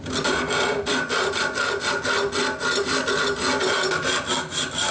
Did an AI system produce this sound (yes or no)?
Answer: no